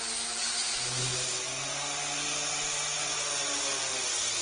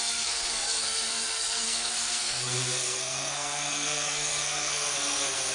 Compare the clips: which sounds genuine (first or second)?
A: first